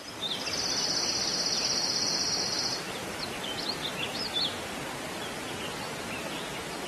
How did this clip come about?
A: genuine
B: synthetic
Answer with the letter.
A